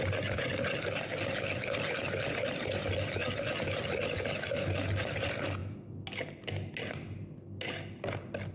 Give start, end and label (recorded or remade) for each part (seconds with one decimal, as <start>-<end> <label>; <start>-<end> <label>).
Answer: 0.0-8.5 recorded